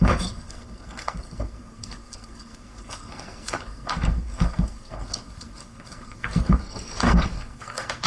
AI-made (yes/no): yes